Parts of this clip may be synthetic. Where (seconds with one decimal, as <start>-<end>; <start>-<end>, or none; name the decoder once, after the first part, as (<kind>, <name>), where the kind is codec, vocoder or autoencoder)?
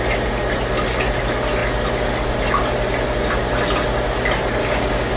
4.6-5.2 (codec, DAC)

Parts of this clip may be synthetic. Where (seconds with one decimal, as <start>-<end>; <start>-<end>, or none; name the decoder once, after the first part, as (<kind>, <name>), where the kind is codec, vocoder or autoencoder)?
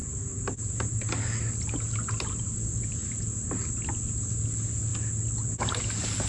none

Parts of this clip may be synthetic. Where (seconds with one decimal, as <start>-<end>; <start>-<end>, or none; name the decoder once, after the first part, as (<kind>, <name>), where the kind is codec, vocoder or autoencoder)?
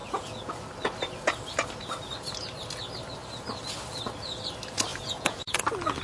0.0-0.5 (vocoder, Vocos); 4.9-5.6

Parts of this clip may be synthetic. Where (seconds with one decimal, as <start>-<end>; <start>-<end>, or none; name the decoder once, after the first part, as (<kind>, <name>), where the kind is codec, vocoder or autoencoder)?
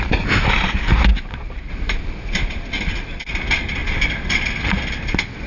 none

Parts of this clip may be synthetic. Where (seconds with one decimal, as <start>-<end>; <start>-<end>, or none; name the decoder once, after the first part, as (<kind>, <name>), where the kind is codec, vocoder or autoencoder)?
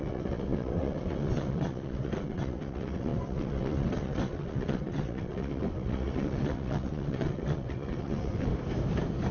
0.0-8.5 (vocoder, WaveNeXt)